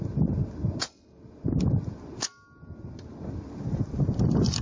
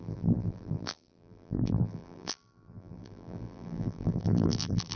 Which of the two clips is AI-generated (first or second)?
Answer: second